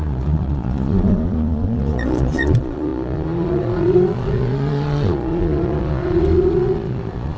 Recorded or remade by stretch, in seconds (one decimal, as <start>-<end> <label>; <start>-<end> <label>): 0.0-7.4 remade